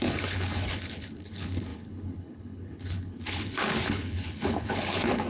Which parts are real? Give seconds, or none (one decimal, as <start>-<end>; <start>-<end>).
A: none